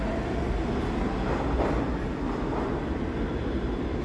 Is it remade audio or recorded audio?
recorded